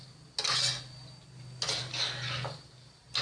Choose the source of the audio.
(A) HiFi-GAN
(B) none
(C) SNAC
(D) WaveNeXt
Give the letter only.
B